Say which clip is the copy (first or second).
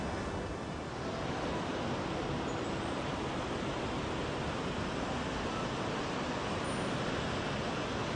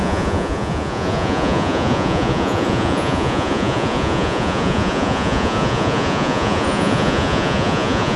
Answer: second